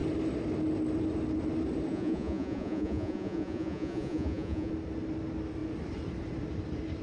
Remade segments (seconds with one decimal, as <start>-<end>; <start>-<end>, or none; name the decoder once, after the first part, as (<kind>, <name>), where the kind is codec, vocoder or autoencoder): 1.9-4.7 (vocoder, Vocos)